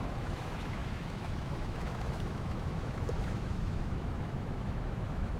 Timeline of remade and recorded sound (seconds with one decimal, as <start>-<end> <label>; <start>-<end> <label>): 0.0-5.4 remade